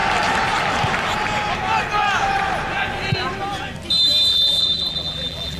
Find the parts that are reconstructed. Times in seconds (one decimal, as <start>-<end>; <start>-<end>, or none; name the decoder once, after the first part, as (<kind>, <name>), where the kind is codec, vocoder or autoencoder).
4.3-5.6 (vocoder, BigVGAN v2)